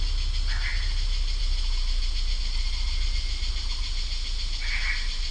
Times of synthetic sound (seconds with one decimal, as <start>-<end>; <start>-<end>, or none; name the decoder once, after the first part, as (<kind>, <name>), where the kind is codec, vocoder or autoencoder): none